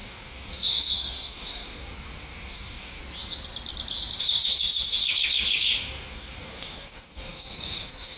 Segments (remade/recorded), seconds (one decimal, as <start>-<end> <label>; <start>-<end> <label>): 0.0-3.0 remade; 3.0-4.2 recorded; 4.2-8.2 remade